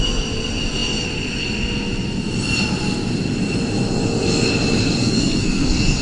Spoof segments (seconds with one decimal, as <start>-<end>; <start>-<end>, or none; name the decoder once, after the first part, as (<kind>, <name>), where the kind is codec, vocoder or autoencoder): 5.0-6.0 (codec, SNAC)